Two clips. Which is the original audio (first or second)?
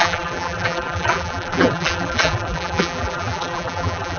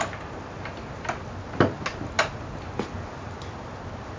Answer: second